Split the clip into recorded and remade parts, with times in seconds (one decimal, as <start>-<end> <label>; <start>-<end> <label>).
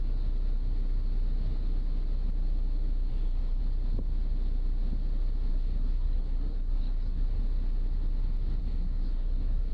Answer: 0.0-3.1 recorded; 3.1-3.6 remade; 3.6-5.5 recorded; 5.5-7.4 remade; 7.4-8.6 recorded; 8.6-9.7 remade